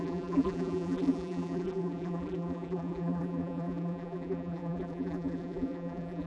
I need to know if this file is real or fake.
fake